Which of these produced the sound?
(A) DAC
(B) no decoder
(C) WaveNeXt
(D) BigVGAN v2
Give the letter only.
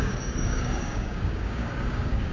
A